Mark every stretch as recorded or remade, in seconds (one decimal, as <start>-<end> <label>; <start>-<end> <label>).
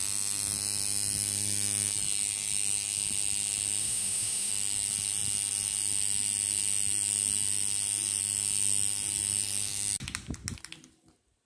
0.0-3.8 recorded; 3.8-4.5 remade; 4.5-11.5 recorded